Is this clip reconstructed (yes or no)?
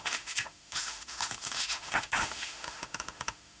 yes